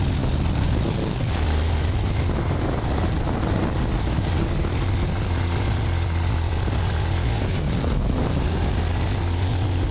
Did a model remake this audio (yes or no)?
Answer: no